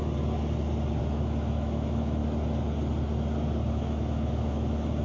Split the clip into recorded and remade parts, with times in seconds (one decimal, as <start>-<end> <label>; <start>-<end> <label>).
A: 0.0-1.0 recorded; 1.0-2.2 remade; 2.2-3.7 recorded; 3.7-5.0 remade